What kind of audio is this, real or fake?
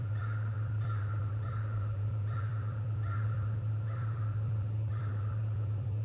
fake